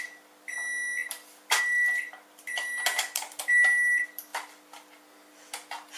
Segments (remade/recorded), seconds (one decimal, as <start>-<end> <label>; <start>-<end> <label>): 0.0-6.0 recorded